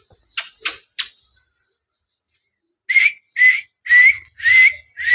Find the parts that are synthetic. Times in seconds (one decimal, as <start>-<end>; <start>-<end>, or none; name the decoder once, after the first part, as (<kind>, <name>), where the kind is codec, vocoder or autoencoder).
none